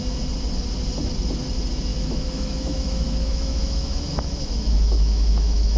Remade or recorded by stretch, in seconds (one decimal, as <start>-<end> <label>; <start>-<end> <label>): 0.0-1.9 recorded; 1.9-5.8 remade